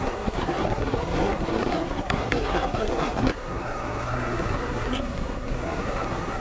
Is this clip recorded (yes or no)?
no